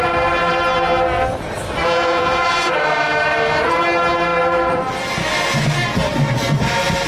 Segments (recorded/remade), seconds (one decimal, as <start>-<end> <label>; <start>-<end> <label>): 0.0-1.8 recorded; 1.8-2.7 remade; 2.7-7.1 recorded